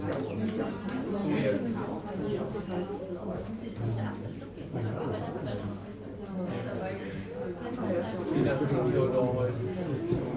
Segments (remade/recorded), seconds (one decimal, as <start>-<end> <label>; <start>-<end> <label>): 0.0-10.4 recorded

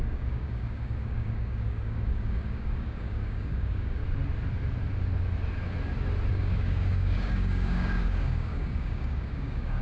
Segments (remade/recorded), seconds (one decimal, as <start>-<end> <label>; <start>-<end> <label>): 0.0-4.0 remade; 4.0-6.3 recorded; 6.3-9.8 remade

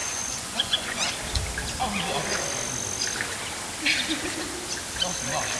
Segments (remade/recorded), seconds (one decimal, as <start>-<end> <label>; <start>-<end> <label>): 0.0-1.1 remade; 1.1-5.6 recorded

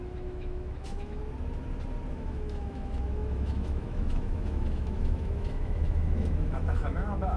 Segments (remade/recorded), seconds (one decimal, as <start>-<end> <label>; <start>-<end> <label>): 0.0-1.2 remade; 1.2-2.1 recorded; 2.1-7.4 remade

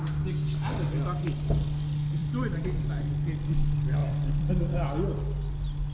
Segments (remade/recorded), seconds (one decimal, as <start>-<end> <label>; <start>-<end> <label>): 0.0-2.2 recorded; 2.2-2.8 remade; 2.8-4.0 recorded; 4.0-4.5 remade; 4.5-5.9 recorded

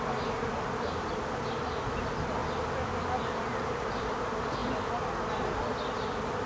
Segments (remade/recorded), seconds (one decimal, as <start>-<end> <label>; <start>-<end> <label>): 0.0-6.5 recorded